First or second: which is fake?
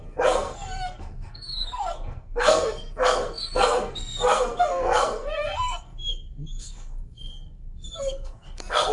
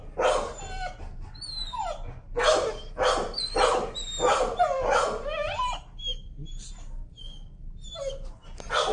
first